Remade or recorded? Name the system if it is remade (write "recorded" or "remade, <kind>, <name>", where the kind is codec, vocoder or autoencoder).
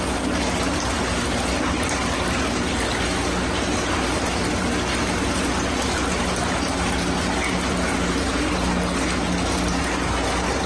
recorded